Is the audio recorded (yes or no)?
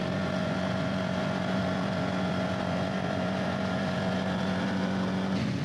no